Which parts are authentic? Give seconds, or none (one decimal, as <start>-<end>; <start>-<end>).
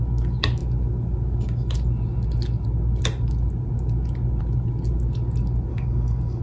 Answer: 0.0-5.7